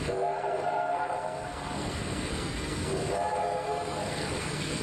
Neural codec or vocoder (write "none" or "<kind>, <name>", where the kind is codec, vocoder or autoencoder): codec, SNAC